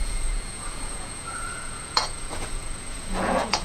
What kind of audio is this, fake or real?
fake